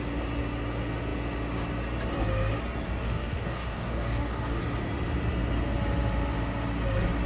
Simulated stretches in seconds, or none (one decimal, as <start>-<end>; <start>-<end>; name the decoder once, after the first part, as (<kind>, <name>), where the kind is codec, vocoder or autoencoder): 3.0-4.6 (codec, DAC)